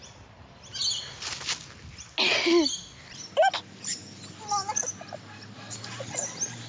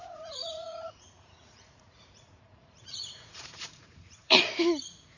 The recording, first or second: first